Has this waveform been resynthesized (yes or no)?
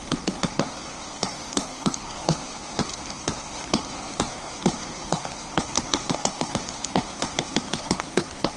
yes